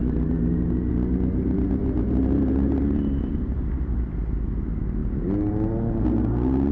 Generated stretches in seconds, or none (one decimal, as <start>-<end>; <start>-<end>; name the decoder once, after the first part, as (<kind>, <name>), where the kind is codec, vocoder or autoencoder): 1.8-3.2 (vocoder, BigVGAN v2)